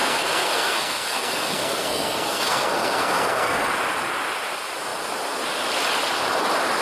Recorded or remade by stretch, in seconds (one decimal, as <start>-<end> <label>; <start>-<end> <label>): 0.0-3.7 remade; 3.7-6.8 recorded